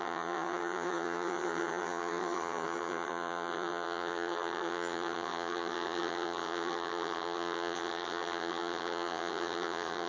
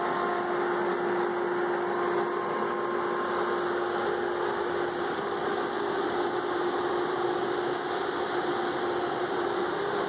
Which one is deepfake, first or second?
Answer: first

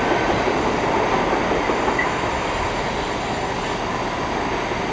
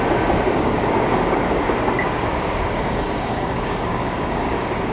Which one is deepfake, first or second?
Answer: second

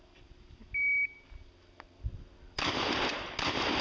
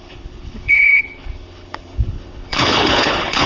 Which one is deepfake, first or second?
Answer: second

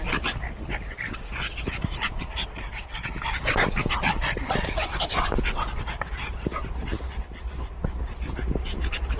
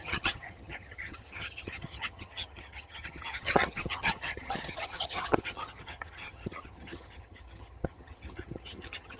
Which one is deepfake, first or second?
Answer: second